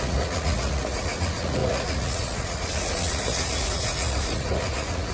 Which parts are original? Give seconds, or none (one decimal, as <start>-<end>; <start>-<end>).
none